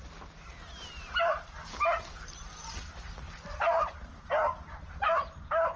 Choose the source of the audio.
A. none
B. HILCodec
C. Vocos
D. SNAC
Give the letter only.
A